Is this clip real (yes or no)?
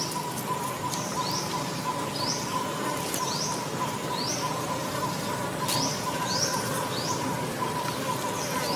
yes